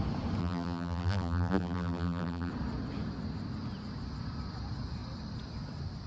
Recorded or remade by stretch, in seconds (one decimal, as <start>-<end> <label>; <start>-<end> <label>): 0.0-0.4 recorded; 0.4-2.5 remade; 2.5-6.1 recorded